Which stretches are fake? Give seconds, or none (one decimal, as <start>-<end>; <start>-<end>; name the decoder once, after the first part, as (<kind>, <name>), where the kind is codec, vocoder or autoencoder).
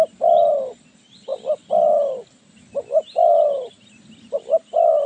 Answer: 0.0-0.7 (vocoder, BigVGAN v2)